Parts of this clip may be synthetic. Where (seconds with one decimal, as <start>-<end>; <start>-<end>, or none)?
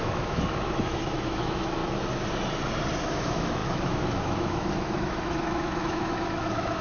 0.0-1.8; 3.0-6.8